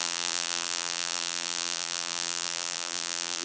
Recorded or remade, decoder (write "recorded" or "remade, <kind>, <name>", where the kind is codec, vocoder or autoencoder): remade, vocoder, BigVGAN v2